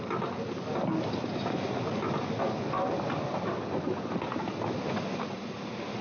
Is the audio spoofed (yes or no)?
no